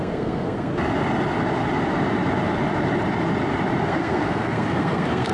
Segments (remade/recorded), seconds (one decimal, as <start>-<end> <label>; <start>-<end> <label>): 0.0-0.7 remade; 0.7-3.8 recorded; 3.8-5.3 remade